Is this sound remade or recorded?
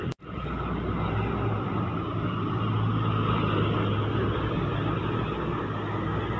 recorded